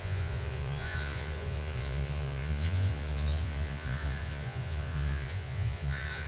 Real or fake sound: fake